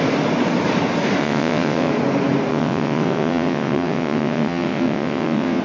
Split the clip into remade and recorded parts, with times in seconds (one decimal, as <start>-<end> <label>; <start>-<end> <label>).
0.0-1.2 recorded; 1.2-1.9 remade; 1.9-2.5 recorded; 2.5-5.6 remade